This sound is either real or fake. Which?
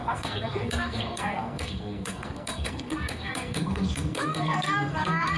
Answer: fake